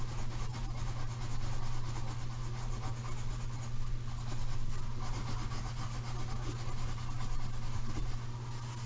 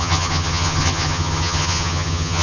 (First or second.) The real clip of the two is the first